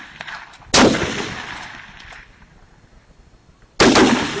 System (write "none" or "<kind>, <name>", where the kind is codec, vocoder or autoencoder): none